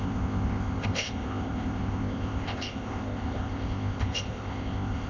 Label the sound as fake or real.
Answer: fake